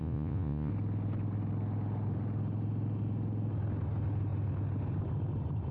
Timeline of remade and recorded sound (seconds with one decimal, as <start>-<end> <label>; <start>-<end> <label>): 0.0-0.7 remade; 0.7-5.7 recorded